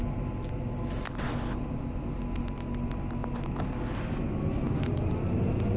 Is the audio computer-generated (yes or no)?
no